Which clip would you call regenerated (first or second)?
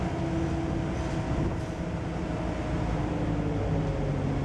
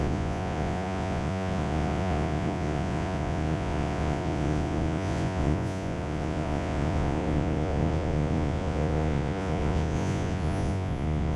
second